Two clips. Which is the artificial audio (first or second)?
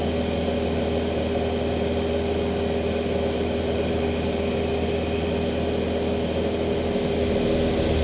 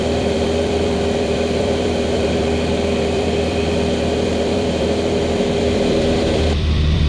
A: second